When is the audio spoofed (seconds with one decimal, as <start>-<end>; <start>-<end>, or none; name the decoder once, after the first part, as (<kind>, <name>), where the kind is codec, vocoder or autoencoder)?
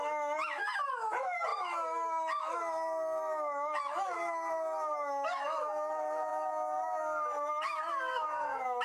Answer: 0.0-8.8 (autoencoder, DAC-VAE)